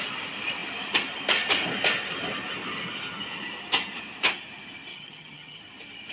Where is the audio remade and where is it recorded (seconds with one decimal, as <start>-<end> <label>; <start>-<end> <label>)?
0.0-4.9 recorded; 4.9-5.6 remade; 5.6-6.1 recorded